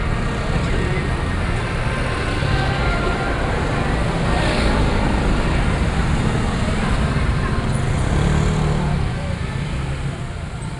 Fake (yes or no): no